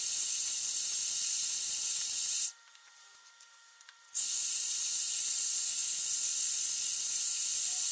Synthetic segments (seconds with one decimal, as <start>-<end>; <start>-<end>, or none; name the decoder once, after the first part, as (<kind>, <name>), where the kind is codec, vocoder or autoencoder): 1.0-4.2 (vocoder, BigVGAN v2)